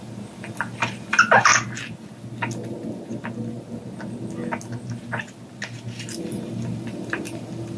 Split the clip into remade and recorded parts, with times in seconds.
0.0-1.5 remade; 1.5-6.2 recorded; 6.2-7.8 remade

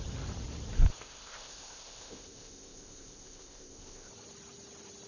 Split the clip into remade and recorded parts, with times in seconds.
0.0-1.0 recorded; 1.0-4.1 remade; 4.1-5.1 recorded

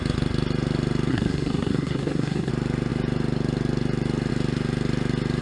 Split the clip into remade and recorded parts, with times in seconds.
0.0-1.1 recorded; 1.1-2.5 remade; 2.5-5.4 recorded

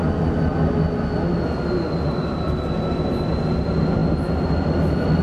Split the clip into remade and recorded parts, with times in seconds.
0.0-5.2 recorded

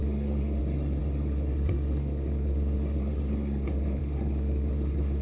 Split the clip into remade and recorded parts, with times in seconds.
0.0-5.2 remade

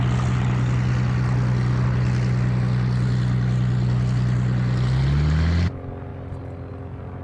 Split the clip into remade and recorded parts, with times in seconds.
0.0-7.2 recorded

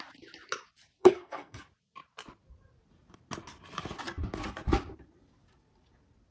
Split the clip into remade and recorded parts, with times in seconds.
0.0-1.0 recorded; 1.0-1.6 remade; 1.6-6.3 recorded

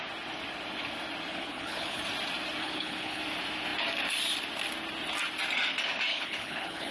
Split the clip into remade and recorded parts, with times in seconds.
0.0-1.3 recorded; 1.3-2.0 remade; 2.0-2.6 recorded; 2.6-3.2 remade; 3.2-6.1 recorded; 6.1-6.9 remade